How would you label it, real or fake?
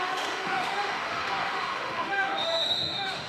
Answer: fake